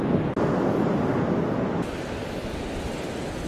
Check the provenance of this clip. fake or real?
real